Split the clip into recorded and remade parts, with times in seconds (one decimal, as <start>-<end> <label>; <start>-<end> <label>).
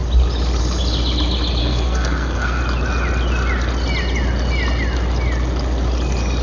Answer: 0.0-1.6 recorded; 1.6-2.6 remade; 2.6-6.4 recorded